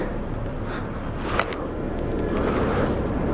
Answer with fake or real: real